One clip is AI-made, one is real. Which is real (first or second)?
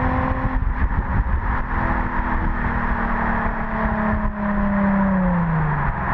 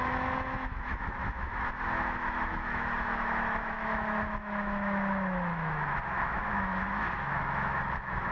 first